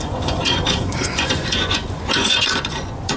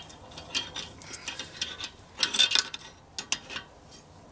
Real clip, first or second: second